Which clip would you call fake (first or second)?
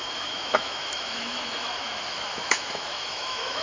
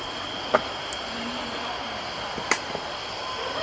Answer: first